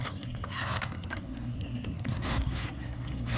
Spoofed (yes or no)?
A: yes